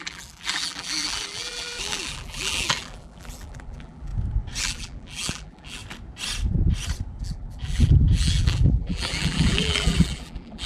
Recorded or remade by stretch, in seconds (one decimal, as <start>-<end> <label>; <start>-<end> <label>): 0.0-4.1 remade; 4.1-4.6 recorded; 4.6-5.8 remade; 5.8-7.2 recorded; 7.2-10.7 remade